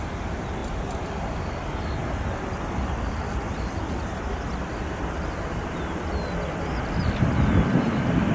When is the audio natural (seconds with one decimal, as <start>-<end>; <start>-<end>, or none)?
0.0-8.3